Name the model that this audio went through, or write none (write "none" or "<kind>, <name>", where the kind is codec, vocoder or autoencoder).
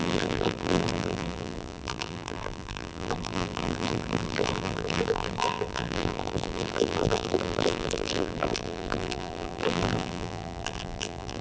vocoder, BigVGAN v2